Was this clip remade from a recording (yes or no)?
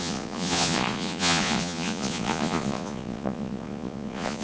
yes